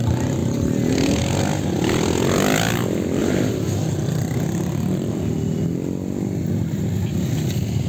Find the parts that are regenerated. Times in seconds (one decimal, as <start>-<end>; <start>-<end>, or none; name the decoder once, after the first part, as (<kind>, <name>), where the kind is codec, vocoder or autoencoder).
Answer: 0.4-1.2 (vocoder, BigVGAN v2); 3.2-3.8